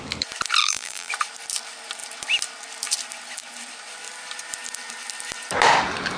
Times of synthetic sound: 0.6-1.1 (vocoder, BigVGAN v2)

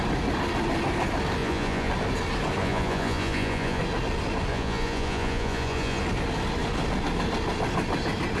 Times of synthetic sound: 1.4-1.9 (vocoder, Vocos); 2.6-3.8; 4.5-6.0